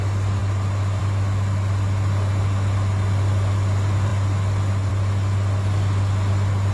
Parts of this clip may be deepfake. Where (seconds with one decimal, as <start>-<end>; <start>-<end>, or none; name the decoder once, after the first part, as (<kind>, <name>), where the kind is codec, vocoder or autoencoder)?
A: none

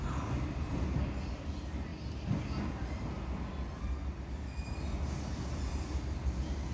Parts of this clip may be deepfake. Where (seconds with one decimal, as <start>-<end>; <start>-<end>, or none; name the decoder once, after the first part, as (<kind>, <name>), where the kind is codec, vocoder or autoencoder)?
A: none

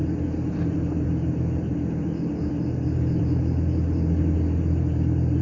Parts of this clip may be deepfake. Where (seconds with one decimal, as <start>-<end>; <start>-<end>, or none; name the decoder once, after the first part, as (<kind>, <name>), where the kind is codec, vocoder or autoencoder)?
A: none

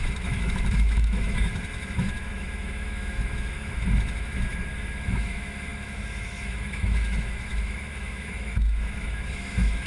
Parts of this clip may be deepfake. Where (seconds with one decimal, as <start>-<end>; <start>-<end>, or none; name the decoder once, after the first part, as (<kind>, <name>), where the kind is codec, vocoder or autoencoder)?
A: 0.0-9.9 (autoencoder, DAC-VAE)

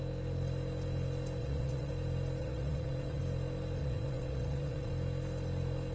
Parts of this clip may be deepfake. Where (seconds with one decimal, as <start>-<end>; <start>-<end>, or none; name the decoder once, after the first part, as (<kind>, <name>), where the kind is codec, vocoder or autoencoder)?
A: 1.4-1.9 (vocoder, WaveNeXt); 2.4-3.2; 3.8-4.9

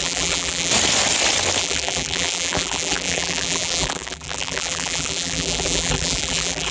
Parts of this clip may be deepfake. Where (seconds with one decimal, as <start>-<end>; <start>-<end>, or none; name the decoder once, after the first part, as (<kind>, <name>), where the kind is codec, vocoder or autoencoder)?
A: 0.0-0.7 (vocoder, BigVGAN v2); 1.6-6.7